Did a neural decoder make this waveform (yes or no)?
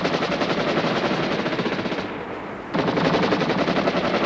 no